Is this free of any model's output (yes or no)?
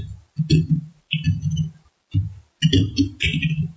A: yes